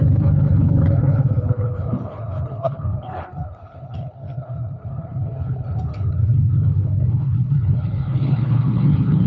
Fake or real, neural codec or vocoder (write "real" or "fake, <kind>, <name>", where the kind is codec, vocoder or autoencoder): fake, codec, HILCodec